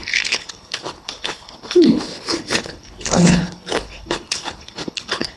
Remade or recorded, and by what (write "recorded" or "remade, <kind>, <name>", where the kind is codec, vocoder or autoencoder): remade, codec, HILCodec